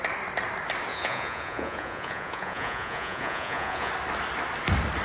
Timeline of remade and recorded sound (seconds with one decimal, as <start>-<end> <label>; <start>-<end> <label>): 0.0-0.9 recorded; 0.9-3.9 remade; 3.9-5.0 recorded